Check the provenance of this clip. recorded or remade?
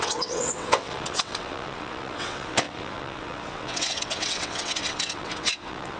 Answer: remade